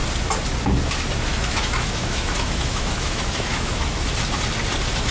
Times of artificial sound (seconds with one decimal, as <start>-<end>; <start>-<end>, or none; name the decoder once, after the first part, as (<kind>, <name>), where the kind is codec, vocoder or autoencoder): 1.3-4.1 (autoencoder, DAC-VAE)